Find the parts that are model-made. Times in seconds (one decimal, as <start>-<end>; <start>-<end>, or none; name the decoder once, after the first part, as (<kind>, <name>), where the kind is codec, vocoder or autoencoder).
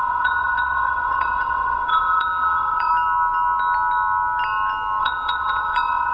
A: 0.0-2.9 (vocoder, WaveNeXt); 5.0-6.1